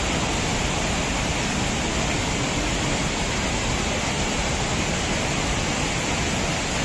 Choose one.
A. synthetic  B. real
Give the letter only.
B